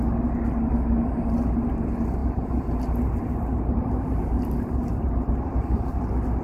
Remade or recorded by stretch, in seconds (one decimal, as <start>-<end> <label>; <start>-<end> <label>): 0.0-2.2 recorded; 2.2-6.0 remade; 6.0-6.4 recorded

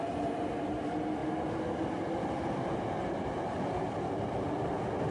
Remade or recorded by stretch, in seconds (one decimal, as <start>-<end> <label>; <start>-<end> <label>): 0.0-5.1 recorded

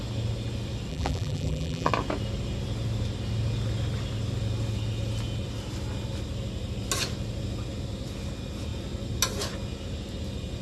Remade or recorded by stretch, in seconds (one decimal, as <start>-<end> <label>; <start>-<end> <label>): 0.0-0.9 recorded; 0.9-1.9 remade; 1.9-10.6 recorded

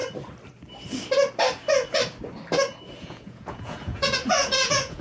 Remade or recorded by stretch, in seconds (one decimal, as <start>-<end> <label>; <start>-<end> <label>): 0.0-3.0 recorded; 3.0-5.0 remade

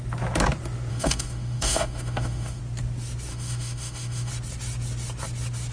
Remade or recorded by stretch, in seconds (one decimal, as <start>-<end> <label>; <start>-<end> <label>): 0.0-0.9 recorded; 0.9-2.6 remade; 2.6-3.3 recorded; 3.3-4.3 remade; 4.3-5.7 recorded

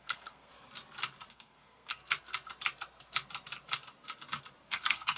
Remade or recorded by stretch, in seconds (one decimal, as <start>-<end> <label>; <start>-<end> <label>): 0.0-0.5 remade; 0.5-1.3 recorded; 1.3-2.0 remade; 2.0-4.7 recorded; 4.7-5.2 remade

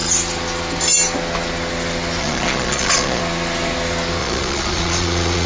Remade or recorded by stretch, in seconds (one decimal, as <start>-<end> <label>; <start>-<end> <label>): 0.0-2.2 recorded; 2.2-3.2 remade; 3.2-4.2 recorded; 4.2-5.5 remade

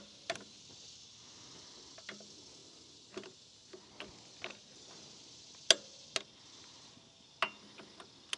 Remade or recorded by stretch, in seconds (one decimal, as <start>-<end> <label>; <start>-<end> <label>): 0.0-8.4 recorded